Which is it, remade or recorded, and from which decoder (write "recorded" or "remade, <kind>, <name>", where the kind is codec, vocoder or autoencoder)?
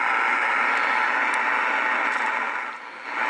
recorded